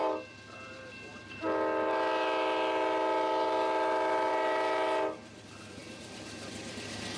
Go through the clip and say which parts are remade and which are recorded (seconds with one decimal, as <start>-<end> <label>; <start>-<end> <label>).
0.0-7.2 recorded